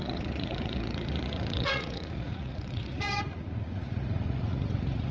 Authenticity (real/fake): fake